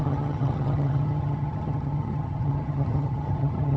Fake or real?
fake